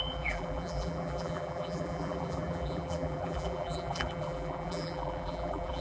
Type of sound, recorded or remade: remade